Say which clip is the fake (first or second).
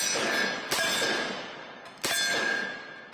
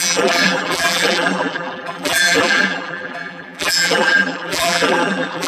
second